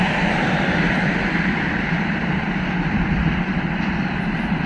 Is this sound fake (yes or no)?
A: yes